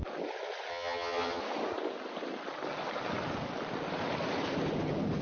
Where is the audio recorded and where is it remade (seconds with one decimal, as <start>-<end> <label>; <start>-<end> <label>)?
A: 0.0-0.7 recorded; 0.7-1.4 remade; 1.4-5.2 recorded